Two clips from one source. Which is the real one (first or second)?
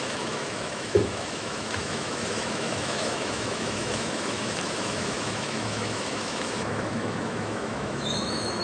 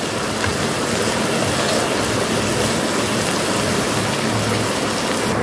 second